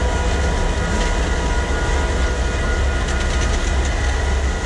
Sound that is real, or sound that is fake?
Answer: real